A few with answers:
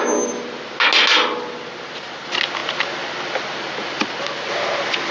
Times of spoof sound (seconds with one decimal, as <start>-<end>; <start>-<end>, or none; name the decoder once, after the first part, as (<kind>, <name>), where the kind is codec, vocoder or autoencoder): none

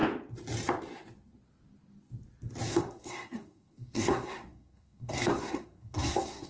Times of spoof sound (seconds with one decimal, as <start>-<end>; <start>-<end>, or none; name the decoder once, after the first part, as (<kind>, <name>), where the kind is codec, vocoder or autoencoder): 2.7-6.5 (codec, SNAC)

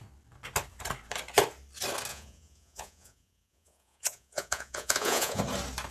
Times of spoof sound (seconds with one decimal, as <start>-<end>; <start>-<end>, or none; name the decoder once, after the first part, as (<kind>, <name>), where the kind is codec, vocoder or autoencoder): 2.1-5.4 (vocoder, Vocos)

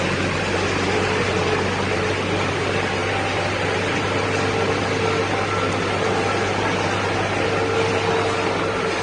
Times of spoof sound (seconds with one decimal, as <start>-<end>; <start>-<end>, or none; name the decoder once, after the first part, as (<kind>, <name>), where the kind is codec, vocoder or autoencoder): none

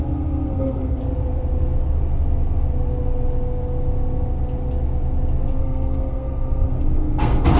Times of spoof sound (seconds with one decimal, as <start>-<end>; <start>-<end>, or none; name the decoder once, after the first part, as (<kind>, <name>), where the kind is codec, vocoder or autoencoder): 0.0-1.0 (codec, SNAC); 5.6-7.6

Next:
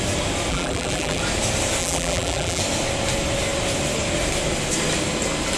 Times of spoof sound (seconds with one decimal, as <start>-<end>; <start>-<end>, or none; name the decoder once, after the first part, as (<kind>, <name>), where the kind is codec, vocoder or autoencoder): 0.5-1.2 (vocoder, BigVGAN v2); 1.8-2.6

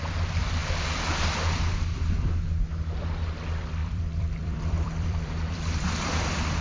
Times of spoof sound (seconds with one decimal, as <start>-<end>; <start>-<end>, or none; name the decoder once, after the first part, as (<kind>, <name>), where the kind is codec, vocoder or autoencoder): 3.8-6.6 (vocoder, BigVGAN v2)

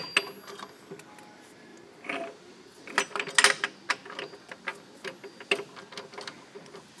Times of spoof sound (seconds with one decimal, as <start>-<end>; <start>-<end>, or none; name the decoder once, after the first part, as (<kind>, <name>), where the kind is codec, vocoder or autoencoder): none